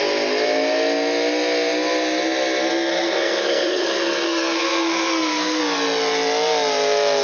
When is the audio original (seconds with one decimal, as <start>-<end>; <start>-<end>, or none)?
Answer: 0.0-2.9; 5.6-7.2